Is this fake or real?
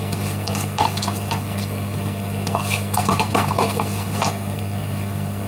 fake